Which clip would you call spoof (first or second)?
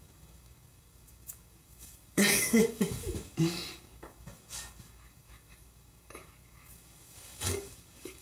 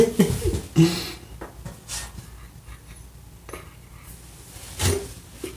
first